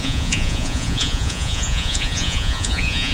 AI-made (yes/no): yes